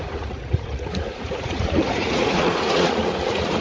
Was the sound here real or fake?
fake